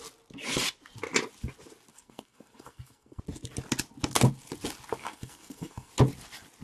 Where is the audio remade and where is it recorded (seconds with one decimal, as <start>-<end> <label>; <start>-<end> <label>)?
0.0-1.9 recorded; 1.9-3.2 remade; 3.2-5.0 recorded; 5.0-5.9 remade; 5.9-6.6 recorded